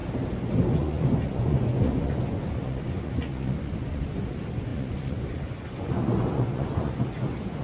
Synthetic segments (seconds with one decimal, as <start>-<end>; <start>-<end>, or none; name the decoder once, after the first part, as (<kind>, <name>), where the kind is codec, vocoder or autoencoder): 0.7-7.6 (vocoder, Vocos)